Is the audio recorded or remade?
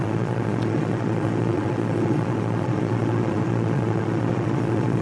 remade